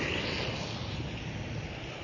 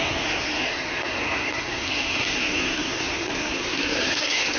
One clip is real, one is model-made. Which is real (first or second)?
first